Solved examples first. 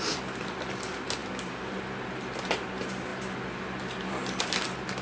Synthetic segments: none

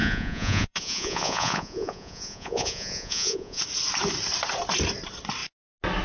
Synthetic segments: 0.0-3.6

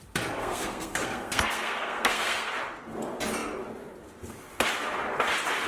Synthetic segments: 0.4-2.5

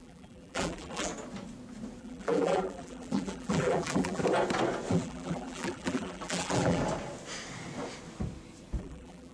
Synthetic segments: 0.0-1.1; 2.0-4.2; 4.9-6.8; 8.8-9.3

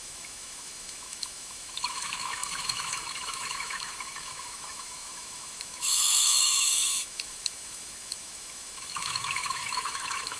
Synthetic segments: 0.0-10.4

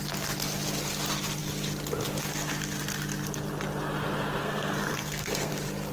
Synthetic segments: 4.4-5.5

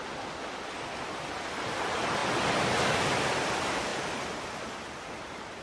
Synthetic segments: none